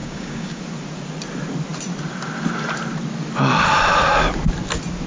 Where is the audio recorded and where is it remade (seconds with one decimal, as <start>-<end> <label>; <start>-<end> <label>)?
0.0-0.6 remade; 0.6-5.1 recorded